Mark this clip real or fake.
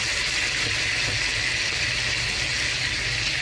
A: real